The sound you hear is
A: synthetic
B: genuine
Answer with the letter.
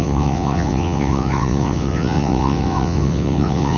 A